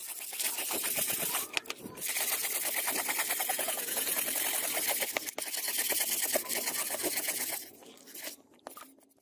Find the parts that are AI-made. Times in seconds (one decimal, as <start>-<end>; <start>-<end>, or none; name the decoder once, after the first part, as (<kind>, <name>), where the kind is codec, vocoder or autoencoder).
3.5-4.1 (vocoder, Vocos); 7.1-7.8